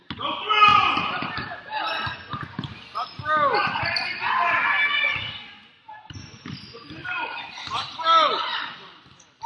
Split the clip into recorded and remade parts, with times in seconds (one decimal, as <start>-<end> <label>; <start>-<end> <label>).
0.0-0.7 recorded; 0.7-1.6 remade; 1.6-7.0 recorded; 7.0-7.6 remade; 7.6-8.5 recorded; 8.5-9.5 remade